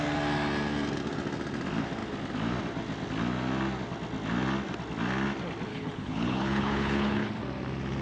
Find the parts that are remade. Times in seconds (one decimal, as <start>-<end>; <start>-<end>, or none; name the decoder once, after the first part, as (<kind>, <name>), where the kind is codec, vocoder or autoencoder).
5.7-7.3 (codec, HILCodec)